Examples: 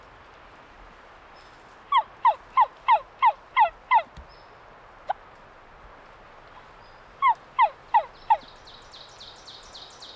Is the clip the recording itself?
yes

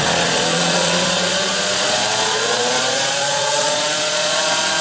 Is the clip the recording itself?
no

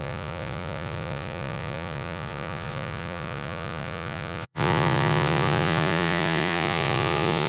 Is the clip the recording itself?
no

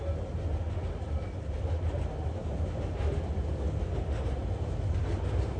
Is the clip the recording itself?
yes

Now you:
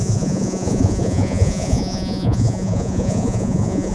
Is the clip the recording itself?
no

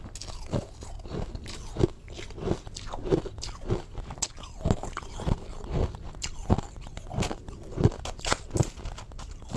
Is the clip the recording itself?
yes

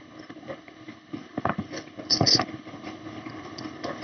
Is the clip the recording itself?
no